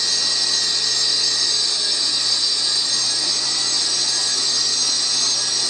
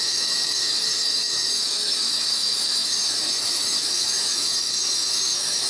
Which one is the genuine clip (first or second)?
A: first